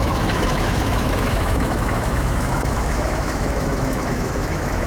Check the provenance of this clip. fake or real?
fake